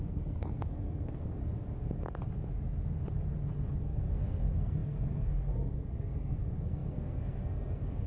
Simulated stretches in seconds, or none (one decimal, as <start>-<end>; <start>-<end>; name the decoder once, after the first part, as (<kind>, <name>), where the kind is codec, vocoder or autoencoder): 0.0-1.4 (codec, SNAC); 3.8-8.1